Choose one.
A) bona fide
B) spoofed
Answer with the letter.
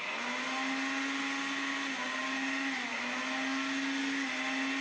A